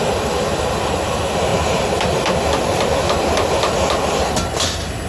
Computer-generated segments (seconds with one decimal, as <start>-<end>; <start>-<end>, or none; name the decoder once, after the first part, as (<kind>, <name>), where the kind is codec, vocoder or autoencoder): none